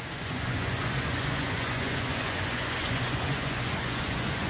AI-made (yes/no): yes